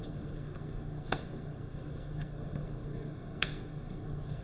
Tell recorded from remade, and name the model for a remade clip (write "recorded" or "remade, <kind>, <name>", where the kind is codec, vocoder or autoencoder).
remade, codec, SNAC